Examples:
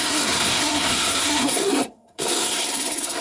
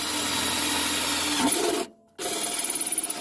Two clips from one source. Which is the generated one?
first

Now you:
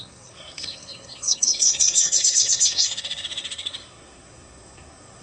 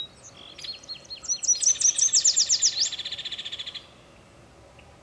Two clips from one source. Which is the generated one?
first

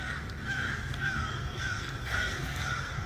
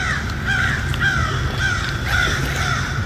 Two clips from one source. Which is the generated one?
first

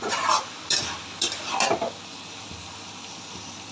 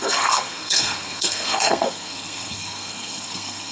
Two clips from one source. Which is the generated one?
second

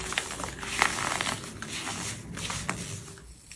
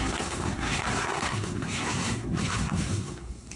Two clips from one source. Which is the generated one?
second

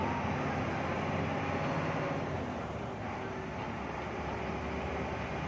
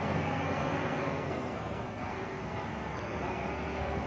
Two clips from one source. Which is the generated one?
second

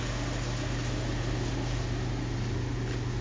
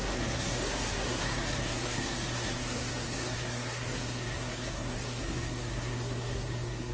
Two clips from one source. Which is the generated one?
second